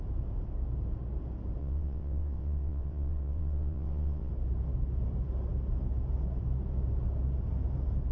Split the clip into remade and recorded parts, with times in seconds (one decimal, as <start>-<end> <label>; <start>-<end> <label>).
0.0-1.6 recorded; 1.6-4.3 remade; 4.3-8.1 recorded